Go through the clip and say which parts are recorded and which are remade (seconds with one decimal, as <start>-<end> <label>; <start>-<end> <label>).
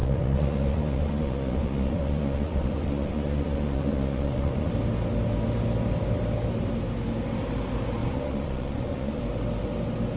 0.0-4.7 remade; 4.7-8.0 recorded; 8.0-9.2 remade; 9.2-10.2 recorded